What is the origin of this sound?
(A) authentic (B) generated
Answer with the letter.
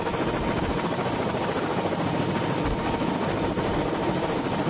A